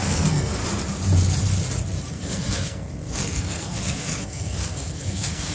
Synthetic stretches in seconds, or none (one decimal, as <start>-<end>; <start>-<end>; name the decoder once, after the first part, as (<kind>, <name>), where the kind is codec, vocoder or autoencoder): 0.0-0.6 (codec, SNAC); 2.1-5.5